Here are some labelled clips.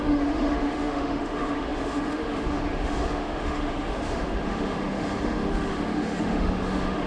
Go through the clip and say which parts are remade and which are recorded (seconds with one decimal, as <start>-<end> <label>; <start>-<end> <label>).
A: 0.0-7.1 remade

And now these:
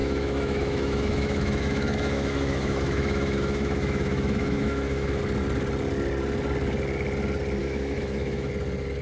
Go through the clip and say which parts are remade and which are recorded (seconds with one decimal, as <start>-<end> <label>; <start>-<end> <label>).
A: 0.0-5.2 remade; 5.2-7.6 recorded; 7.6-8.5 remade; 8.5-9.0 recorded

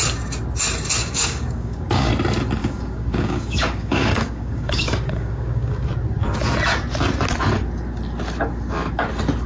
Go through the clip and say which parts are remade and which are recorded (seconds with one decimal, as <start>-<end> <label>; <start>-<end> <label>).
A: 0.0-1.0 recorded; 1.0-2.1 remade; 2.1-2.6 recorded; 2.6-5.9 remade; 5.9-9.5 recorded

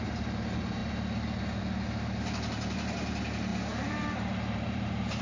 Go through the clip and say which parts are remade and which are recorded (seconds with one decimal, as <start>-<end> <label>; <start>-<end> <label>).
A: 0.0-3.5 recorded; 3.5-5.2 remade

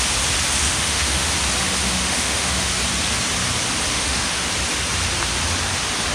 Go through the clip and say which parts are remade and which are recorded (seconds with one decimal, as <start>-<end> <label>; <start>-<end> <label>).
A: 0.0-0.6 recorded; 0.6-1.3 remade; 1.3-1.8 recorded; 1.8-2.7 remade; 2.7-3.9 recorded; 3.9-4.5 remade; 4.5-6.1 recorded

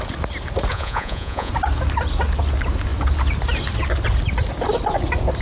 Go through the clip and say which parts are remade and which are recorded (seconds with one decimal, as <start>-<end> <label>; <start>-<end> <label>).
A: 0.0-0.7 recorded; 0.7-1.5 remade; 1.5-5.4 recorded